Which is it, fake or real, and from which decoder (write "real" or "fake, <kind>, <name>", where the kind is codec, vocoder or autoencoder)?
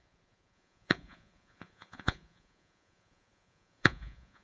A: fake, vocoder, Vocos